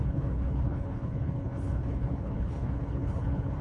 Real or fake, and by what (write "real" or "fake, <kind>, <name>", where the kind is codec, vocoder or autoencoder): fake, codec, HILCodec